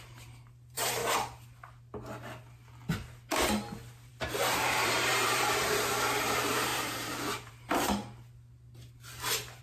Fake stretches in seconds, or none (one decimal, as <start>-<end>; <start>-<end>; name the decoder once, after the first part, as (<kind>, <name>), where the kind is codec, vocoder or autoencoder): 0.0-1.0 (vocoder, BigVGAN v2); 4.1-8.0